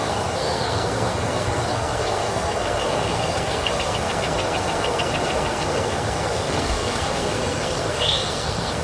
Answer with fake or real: fake